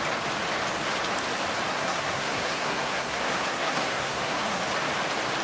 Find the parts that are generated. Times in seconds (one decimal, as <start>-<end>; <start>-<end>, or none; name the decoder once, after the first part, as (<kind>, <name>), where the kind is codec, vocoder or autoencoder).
1.7-4.6 (codec, SNAC)